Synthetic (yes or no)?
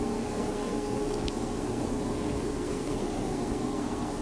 yes